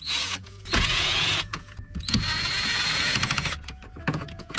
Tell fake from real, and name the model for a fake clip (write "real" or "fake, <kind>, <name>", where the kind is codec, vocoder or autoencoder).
fake, vocoder, Vocos